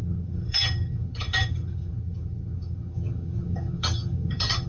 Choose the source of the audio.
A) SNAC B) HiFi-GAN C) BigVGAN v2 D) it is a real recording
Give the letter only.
B